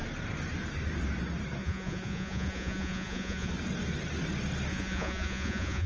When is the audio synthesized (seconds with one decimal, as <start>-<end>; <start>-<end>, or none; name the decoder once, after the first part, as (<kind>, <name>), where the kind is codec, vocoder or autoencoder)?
1.6-3.5 (vocoder, Vocos); 4.7-5.9